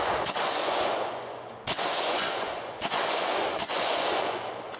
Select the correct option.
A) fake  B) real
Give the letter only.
A